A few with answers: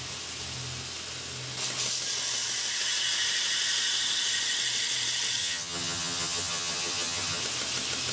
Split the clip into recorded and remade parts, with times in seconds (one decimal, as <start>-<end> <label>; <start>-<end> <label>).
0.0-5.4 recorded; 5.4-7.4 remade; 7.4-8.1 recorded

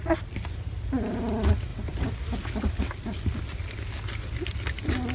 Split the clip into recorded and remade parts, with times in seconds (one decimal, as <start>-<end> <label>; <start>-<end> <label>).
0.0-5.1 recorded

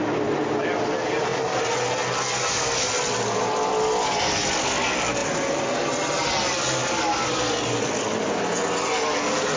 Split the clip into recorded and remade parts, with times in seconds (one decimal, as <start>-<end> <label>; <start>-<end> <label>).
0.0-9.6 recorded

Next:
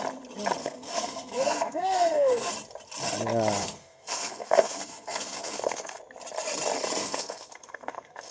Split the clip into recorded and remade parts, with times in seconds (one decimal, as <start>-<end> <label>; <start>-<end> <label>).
0.0-0.6 recorded; 0.6-2.5 remade; 2.5-3.6 recorded; 3.6-6.0 remade; 6.0-7.0 recorded; 7.0-8.3 remade

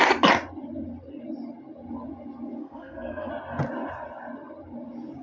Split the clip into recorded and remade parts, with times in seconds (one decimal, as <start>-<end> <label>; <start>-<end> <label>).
0.0-2.6 recorded; 2.6-3.3 remade; 3.3-5.2 recorded

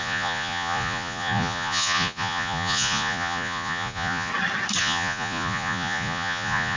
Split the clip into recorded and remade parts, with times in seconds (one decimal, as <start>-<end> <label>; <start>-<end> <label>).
0.0-4.3 remade; 4.3-4.8 recorded; 4.8-6.8 remade

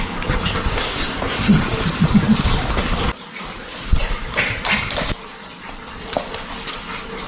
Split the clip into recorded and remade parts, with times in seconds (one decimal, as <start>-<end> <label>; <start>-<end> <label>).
0.0-0.7 recorded; 0.7-1.5 remade; 1.5-7.3 recorded